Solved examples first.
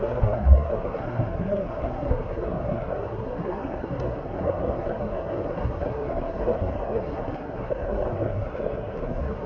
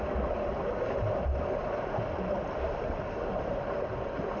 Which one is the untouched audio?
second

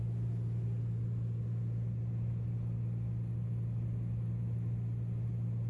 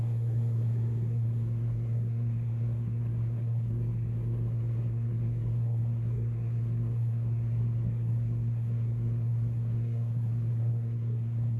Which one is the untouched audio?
first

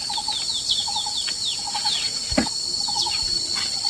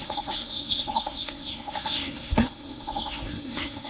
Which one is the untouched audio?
first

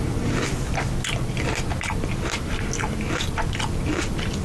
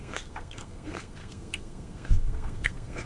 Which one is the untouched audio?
first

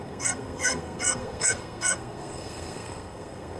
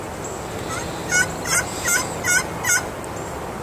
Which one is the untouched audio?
second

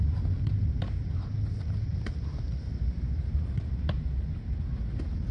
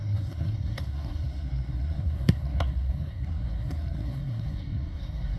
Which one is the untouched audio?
first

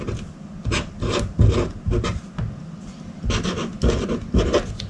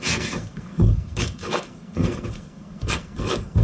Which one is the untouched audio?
first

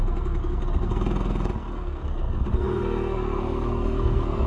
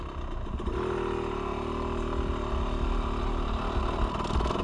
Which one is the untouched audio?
second